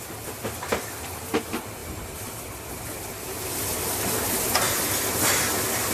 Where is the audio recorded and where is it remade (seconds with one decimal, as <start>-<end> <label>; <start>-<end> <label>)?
0.0-1.8 recorded; 1.8-2.7 remade; 2.7-5.9 recorded